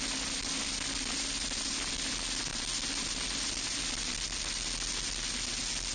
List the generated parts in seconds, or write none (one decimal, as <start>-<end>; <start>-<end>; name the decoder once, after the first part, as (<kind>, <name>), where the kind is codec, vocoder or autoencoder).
none